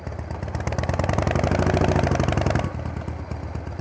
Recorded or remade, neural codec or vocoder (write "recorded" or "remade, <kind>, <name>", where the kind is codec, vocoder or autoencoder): recorded